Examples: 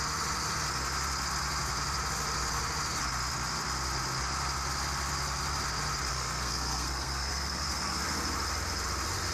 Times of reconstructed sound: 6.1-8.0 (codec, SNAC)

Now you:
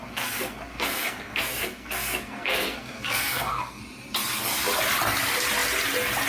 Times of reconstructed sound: 0.0-3.8 (codec, SNAC)

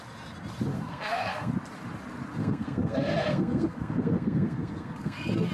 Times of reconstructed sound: 0.7-1.5 (codec, SNAC); 2.4-5.5

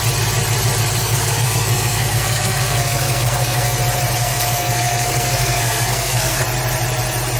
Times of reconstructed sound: 1.0-3.8 (codec, SNAC); 4.2-6.4